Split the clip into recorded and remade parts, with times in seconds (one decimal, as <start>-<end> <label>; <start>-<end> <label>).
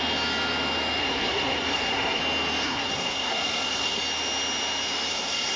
0.0-1.0 recorded; 1.0-2.2 remade; 2.2-2.6 recorded; 2.6-4.0 remade; 4.0-5.1 recorded; 5.1-5.6 remade